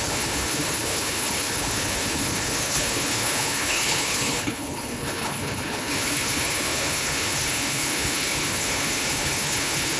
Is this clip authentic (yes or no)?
no